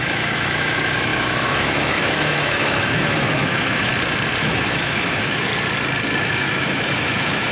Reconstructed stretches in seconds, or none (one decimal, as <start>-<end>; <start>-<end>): 0.0-3.9; 4.4-5.5; 6.2-7.5